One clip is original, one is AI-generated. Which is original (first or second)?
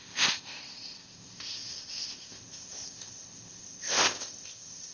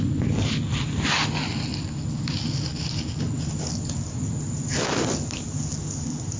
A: second